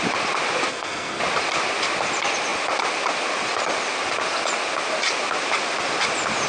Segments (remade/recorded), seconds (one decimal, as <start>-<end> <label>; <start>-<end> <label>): 0.0-0.7 recorded; 0.7-1.2 remade; 1.2-6.5 recorded